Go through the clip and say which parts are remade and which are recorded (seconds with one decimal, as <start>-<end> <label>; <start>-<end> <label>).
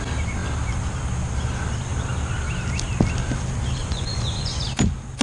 0.0-3.8 recorded; 3.8-4.6 remade; 4.6-5.2 recorded